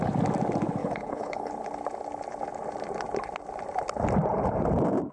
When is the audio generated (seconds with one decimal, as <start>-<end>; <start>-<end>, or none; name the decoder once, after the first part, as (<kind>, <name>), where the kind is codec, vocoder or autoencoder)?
0.8-1.5 (codec, HILCodec)